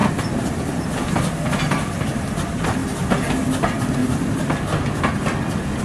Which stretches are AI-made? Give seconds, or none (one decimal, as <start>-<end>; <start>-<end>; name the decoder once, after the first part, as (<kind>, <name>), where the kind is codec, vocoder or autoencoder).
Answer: 0.0-0.7 (vocoder, BigVGAN v2)